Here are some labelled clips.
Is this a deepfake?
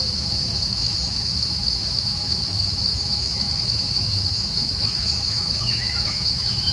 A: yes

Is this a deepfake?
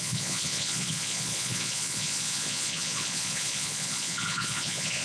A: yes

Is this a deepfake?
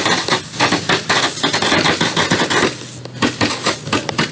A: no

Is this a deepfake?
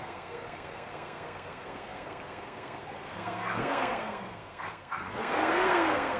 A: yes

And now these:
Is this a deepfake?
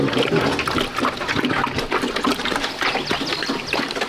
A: no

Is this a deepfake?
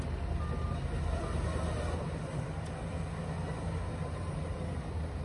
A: no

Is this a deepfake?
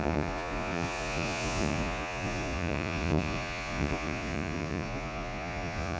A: yes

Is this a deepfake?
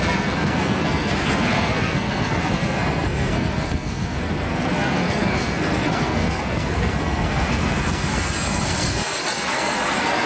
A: yes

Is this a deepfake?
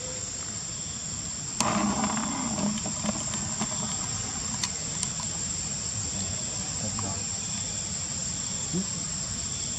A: no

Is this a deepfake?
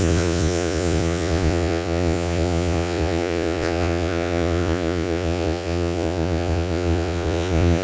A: yes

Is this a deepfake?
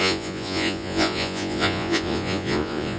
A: yes